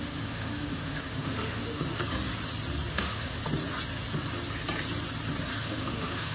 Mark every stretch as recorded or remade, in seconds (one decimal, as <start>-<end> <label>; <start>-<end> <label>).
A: 0.0-2.0 remade; 2.0-2.9 recorded; 2.9-3.4 remade; 3.4-5.6 recorded; 5.6-6.3 remade